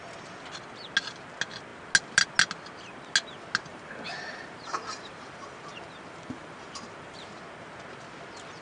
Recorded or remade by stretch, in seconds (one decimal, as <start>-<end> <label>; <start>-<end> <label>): 0.0-3.7 recorded; 3.7-7.3 remade; 7.3-8.6 recorded